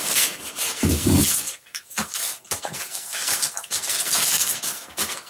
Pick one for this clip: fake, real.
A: fake